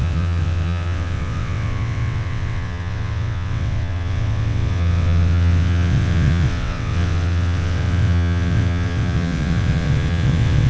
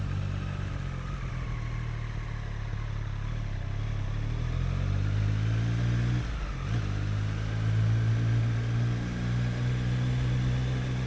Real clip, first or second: second